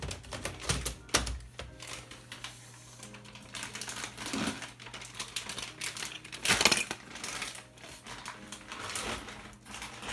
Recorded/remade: recorded